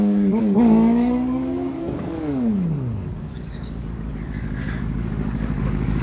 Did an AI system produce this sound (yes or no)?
yes